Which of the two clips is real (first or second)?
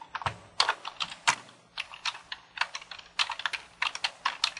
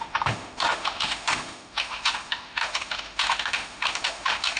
first